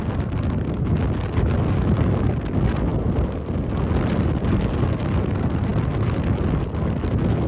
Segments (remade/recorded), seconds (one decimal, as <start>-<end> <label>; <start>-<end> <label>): 0.0-2.9 recorded; 2.9-4.6 remade; 4.6-7.5 recorded